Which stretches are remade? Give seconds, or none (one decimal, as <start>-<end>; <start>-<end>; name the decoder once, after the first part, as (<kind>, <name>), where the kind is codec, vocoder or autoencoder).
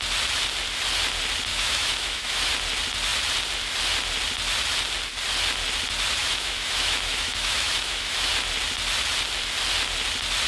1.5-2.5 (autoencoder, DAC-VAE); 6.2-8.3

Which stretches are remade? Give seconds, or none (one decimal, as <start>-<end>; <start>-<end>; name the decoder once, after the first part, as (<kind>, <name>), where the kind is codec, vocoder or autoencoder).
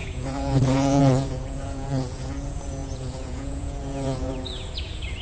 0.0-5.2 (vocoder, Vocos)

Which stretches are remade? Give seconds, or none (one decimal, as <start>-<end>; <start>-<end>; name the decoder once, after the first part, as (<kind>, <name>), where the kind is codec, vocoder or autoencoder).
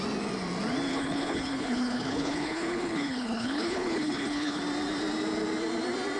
0.9-4.6 (codec, HILCodec)